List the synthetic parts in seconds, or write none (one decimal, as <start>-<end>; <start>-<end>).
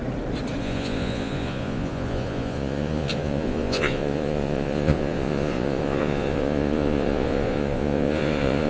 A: 0.6-8.7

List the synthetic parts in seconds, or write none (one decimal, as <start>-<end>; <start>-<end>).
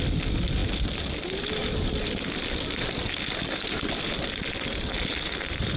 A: none